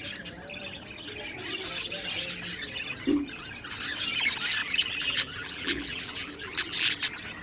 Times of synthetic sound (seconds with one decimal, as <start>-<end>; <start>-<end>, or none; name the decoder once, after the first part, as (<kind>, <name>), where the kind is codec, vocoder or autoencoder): 4.6-6.9 (vocoder, BigVGAN v2)